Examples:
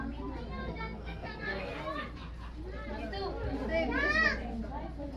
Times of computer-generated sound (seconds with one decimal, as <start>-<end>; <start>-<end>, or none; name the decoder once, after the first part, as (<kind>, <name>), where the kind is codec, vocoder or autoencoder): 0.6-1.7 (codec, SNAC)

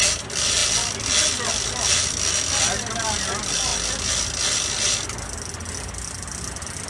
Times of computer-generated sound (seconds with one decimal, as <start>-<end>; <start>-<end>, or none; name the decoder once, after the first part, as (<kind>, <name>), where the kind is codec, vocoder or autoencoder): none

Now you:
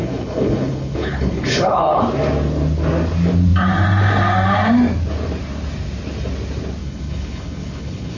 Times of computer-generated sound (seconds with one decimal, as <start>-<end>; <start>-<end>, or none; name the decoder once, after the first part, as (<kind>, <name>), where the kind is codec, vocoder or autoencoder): 0.0-2.0 (codec, HILCodec); 6.8-8.2